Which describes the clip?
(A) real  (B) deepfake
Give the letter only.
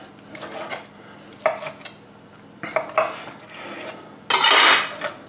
A